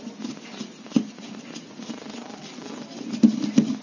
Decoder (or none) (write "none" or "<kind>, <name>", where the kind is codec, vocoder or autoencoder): none